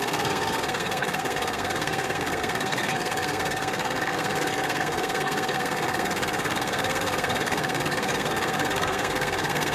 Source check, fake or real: fake